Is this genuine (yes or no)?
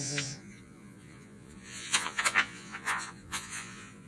no